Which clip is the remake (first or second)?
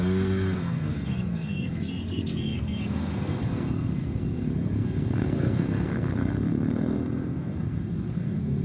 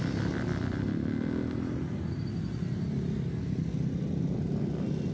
first